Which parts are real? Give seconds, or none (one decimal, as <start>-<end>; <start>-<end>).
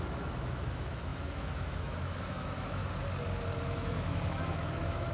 2.8-3.6